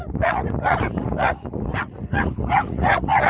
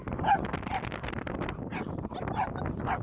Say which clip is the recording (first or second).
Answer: second